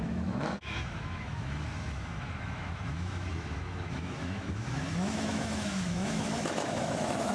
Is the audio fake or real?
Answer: fake